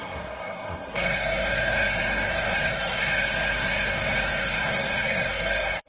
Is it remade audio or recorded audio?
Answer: remade